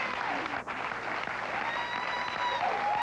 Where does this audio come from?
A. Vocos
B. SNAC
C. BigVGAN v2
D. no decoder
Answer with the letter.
D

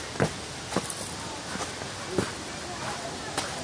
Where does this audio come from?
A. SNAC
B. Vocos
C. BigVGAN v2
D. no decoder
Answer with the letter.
D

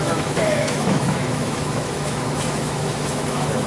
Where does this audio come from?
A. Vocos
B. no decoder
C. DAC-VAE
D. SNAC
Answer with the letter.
C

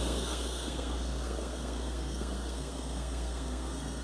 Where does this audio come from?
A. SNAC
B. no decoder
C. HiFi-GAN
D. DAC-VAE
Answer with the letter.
A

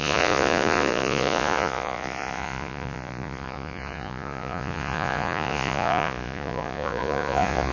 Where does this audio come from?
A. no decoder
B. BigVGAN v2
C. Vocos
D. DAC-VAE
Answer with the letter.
C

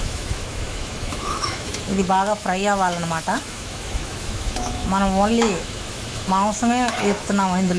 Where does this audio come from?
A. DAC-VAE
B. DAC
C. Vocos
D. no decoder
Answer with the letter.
A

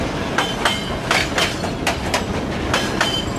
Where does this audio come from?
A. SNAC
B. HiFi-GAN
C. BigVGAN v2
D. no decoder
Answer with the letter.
D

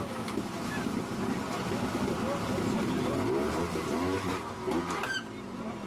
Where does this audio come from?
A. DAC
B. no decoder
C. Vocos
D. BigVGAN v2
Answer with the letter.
B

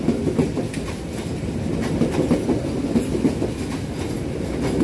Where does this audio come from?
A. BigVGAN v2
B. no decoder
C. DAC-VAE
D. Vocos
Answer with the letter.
B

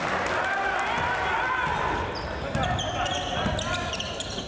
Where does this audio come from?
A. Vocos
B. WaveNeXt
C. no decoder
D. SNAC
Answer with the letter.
C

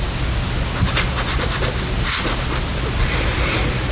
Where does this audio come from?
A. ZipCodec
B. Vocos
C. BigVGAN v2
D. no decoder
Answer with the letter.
D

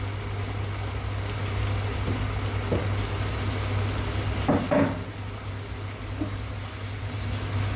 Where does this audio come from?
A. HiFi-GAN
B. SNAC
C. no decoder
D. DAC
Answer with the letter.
C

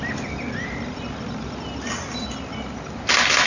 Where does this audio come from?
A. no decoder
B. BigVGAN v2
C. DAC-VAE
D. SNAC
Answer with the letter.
A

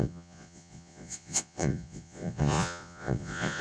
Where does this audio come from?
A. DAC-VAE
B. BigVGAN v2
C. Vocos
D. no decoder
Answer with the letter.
C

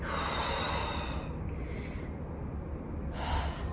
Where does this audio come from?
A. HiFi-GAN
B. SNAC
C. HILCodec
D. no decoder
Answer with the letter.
D